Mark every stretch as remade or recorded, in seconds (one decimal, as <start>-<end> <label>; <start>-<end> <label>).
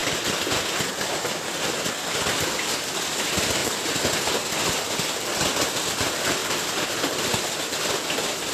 0.0-6.4 recorded; 6.4-7.0 remade; 7.0-8.5 recorded